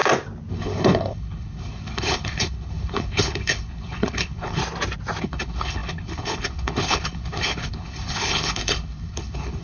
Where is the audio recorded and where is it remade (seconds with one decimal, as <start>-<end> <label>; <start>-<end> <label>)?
0.0-0.5 recorded; 0.5-4.6 remade; 4.6-5.2 recorded; 5.2-9.6 remade